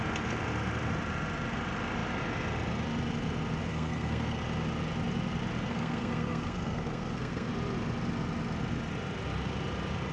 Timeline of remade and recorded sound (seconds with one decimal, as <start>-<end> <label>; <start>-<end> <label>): 0.0-3.7 recorded; 3.7-4.4 remade; 4.4-5.7 recorded; 5.7-7.5 remade; 7.5-10.1 recorded